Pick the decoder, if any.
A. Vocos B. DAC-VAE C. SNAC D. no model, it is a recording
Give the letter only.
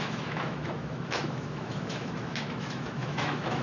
B